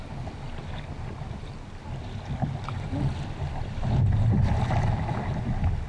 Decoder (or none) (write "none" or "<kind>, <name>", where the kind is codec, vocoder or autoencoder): none